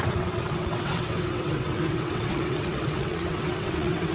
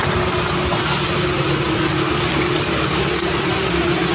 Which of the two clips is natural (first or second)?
second